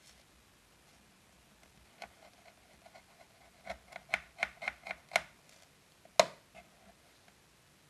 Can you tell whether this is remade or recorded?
recorded